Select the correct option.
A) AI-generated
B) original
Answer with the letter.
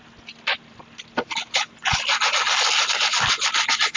B